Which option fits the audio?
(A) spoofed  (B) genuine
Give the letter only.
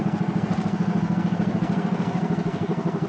A